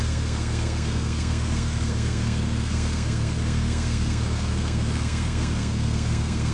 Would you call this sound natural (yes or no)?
no